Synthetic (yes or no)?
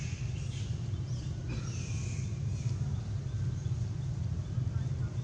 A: no